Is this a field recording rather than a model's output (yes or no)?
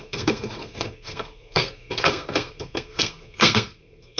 no